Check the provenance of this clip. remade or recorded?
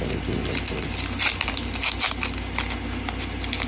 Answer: recorded